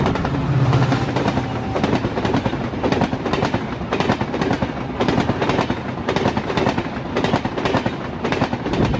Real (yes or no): yes